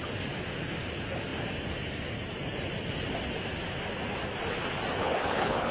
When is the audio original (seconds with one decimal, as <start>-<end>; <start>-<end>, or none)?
0.0-5.0